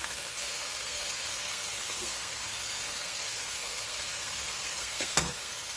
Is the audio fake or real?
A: fake